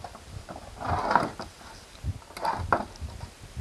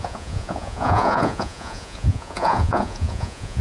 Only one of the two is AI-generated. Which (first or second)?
second